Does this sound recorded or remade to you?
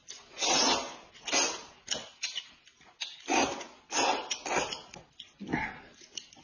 recorded